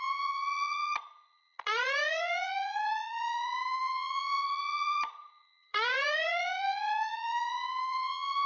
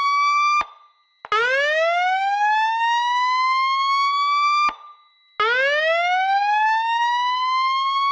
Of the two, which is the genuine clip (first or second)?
second